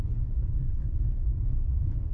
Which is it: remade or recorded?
remade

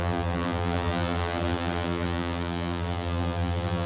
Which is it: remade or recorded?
remade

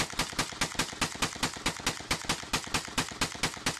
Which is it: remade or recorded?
recorded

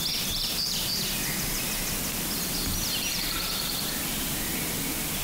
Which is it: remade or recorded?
recorded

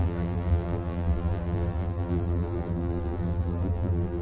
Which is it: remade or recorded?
remade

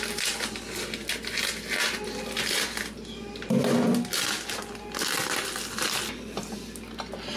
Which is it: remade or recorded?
recorded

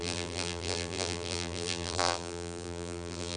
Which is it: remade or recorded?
remade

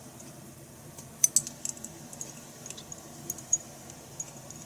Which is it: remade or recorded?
recorded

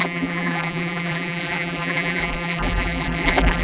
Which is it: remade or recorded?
remade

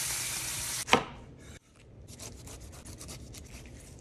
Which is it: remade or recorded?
remade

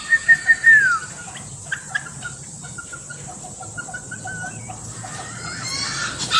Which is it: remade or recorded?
recorded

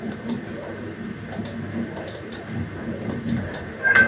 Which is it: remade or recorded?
remade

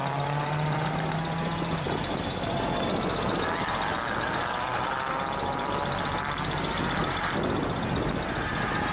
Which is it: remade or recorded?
recorded